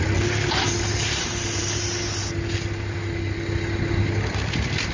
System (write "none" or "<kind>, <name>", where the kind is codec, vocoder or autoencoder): none